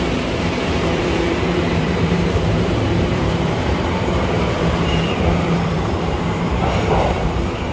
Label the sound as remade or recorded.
remade